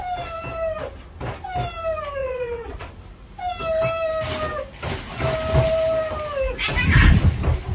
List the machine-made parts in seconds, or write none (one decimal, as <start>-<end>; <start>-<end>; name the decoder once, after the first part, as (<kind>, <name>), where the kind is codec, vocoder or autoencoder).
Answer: 2.2-2.9 (vocoder, WaveNeXt)